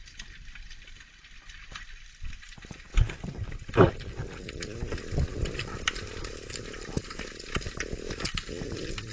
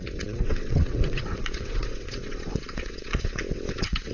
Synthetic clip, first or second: second